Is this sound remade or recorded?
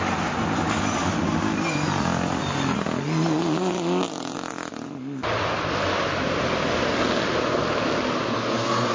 recorded